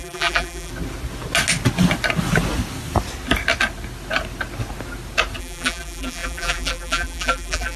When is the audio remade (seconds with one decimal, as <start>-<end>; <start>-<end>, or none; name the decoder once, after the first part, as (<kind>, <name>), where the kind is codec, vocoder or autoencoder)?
0.0-0.7 (vocoder, BigVGAN v2); 5.4-7.8